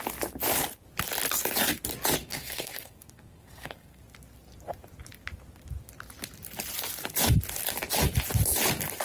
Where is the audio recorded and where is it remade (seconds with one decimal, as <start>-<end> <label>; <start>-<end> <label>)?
0.0-2.2 recorded; 2.2-4.0 remade; 4.0-9.0 recorded